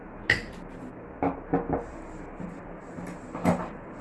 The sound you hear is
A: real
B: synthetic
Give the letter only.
A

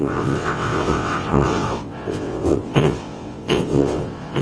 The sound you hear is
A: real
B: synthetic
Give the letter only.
B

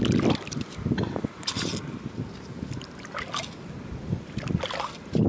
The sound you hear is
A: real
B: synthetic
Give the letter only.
A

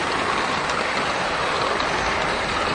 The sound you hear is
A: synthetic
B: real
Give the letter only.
B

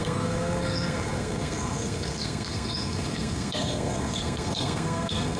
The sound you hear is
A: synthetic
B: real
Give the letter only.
A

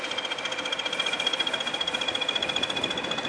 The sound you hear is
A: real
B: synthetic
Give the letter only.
A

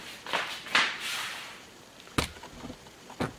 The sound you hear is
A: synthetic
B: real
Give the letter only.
A